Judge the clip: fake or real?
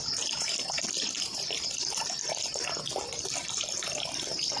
real